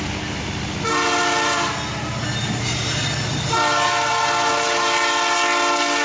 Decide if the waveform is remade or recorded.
recorded